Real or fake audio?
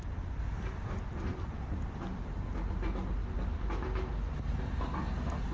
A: real